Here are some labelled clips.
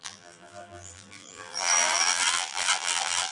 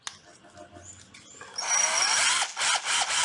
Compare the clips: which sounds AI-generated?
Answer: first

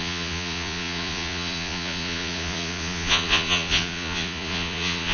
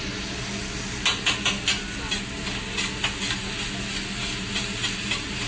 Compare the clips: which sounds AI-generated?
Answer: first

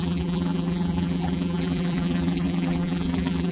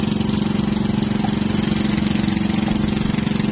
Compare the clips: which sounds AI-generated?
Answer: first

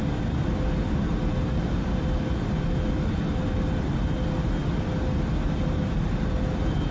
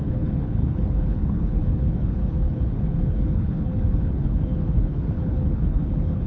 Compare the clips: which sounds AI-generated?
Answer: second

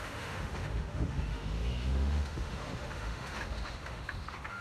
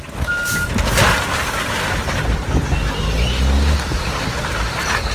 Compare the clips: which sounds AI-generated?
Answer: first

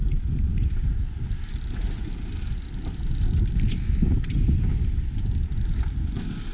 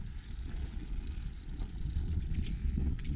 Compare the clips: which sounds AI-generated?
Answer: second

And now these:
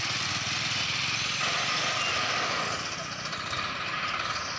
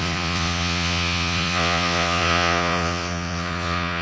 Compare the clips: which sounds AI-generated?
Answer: second